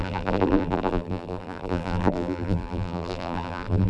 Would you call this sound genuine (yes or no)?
no